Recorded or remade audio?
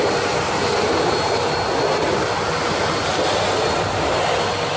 recorded